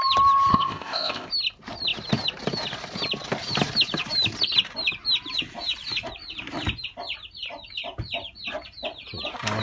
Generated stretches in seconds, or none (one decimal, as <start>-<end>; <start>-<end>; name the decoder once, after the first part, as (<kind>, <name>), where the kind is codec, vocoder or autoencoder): 0.5-1.3 (codec, ZipCodec)